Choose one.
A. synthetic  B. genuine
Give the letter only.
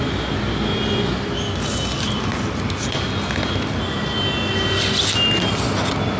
B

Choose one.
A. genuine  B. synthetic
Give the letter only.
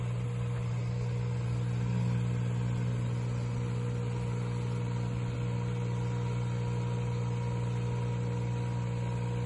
A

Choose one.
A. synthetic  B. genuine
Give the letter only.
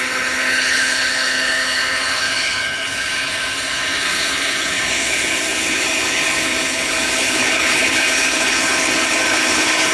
A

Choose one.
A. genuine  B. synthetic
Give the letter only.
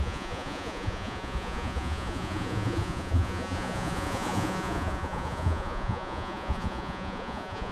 B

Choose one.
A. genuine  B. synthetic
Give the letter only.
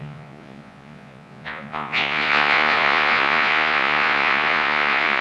B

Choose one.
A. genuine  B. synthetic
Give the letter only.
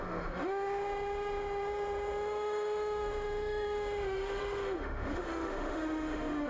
B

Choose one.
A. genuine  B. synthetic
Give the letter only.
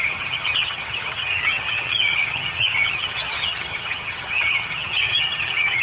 B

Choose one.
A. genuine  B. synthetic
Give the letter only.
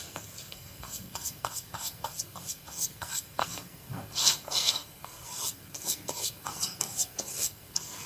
B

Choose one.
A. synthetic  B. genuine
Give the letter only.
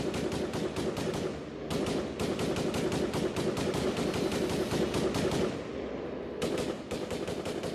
B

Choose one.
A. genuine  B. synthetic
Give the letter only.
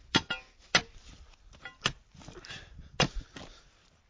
A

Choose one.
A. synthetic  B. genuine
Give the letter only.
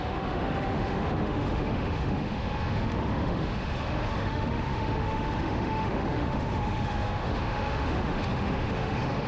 A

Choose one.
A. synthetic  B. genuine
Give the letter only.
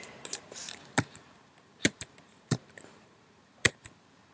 A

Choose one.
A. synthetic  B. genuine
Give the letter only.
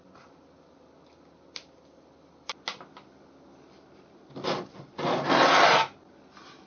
B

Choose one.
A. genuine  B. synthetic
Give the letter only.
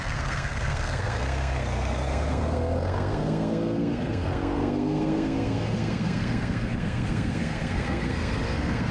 B